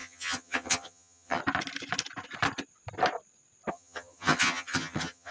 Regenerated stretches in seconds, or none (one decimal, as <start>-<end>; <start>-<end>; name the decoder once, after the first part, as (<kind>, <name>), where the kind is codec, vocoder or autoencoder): 0.0-1.4 (vocoder, HiFi-GAN); 3.7-5.3